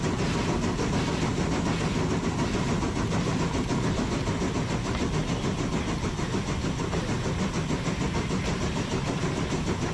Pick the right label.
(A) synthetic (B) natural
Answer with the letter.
B